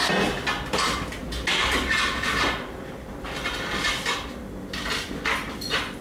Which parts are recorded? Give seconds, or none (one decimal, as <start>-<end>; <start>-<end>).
0.0-6.0